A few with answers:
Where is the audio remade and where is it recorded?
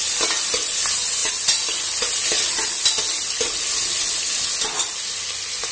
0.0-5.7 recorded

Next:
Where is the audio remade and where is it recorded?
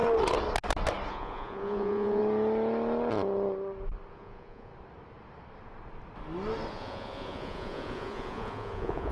0.0-1.1 recorded; 1.1-2.2 remade; 2.2-4.1 recorded; 4.1-4.7 remade; 4.7-6.7 recorded; 6.7-9.1 remade